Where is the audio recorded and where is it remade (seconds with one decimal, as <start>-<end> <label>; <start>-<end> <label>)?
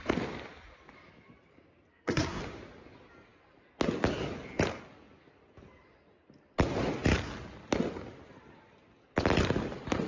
0.0-1.9 recorded; 1.9-2.4 remade; 2.4-10.1 recorded